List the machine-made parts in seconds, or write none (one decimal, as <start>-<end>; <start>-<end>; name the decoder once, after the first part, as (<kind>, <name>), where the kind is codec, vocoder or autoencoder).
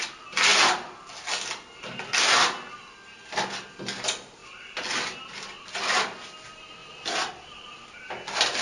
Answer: none